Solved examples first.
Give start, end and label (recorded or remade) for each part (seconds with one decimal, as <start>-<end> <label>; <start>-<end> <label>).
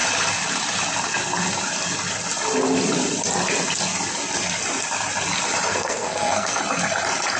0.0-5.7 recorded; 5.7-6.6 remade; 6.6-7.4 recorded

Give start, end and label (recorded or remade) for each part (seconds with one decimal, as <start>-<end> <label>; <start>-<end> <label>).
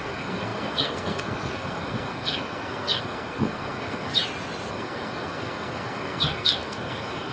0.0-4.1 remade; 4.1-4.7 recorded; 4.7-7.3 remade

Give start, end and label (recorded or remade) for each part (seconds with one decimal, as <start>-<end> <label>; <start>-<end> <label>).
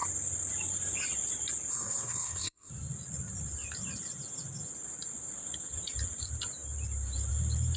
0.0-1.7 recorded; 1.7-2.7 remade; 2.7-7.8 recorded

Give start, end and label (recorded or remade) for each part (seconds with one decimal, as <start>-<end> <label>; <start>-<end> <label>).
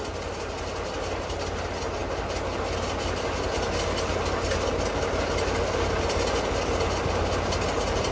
0.0-8.1 recorded